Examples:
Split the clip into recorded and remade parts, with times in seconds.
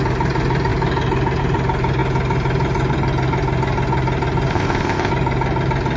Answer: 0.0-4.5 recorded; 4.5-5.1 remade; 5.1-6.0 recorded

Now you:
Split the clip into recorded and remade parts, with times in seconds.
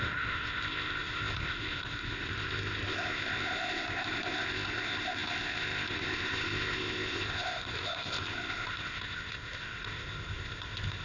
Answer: 0.0-11.0 remade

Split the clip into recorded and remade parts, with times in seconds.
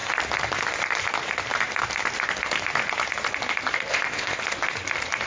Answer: 0.0-3.9 recorded; 3.9-4.4 remade; 4.4-5.3 recorded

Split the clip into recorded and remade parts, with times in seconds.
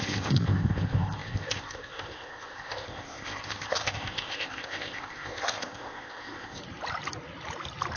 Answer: 0.0-6.6 remade; 6.6-8.0 recorded